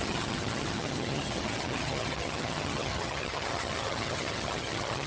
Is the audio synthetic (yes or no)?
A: yes